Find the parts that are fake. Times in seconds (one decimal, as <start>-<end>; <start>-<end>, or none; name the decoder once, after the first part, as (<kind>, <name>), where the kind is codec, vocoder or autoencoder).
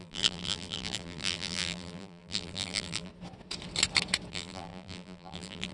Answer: 0.0-3.1 (vocoder, BigVGAN v2); 4.3-5.7